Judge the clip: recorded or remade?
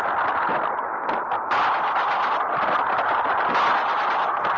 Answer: recorded